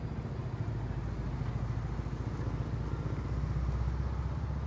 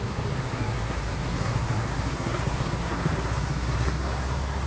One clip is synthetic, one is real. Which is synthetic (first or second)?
second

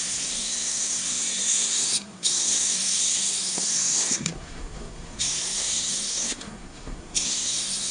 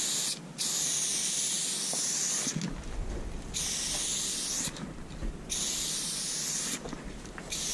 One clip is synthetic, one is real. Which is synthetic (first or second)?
first